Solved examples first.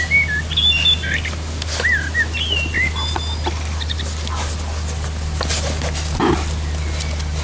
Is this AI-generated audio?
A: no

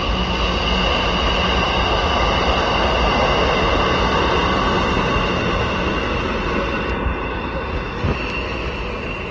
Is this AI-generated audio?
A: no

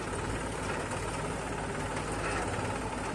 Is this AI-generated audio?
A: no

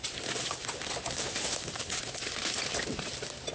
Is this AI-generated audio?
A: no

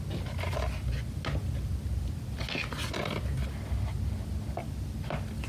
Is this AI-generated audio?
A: no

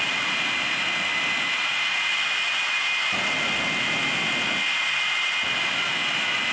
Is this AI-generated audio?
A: no